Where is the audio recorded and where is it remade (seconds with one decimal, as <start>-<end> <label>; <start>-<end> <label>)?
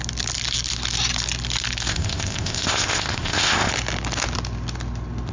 0.0-1.9 recorded; 1.9-3.7 remade; 3.7-5.3 recorded